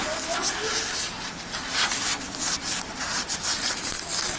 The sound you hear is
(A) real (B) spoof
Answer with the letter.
A